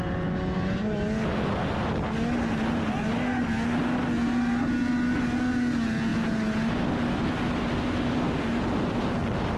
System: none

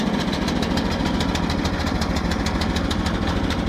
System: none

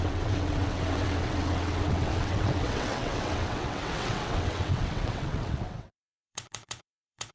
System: vocoder, WaveNeXt